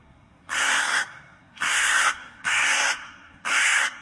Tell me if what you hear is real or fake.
fake